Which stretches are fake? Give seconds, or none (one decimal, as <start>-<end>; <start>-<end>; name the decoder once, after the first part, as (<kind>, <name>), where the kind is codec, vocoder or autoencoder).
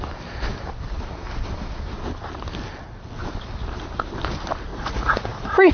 4.7-5.7 (vocoder, Vocos)